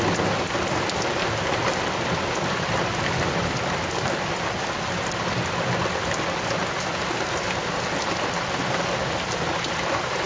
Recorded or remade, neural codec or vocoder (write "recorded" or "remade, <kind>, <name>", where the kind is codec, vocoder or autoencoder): recorded